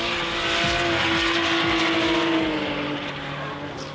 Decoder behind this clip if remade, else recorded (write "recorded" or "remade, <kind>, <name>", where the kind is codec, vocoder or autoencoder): recorded